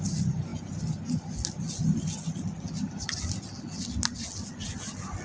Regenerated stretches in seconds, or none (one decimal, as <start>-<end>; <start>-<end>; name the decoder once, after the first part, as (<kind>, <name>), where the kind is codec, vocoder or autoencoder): none